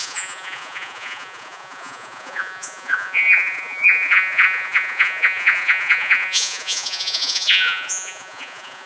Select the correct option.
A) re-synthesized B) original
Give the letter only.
A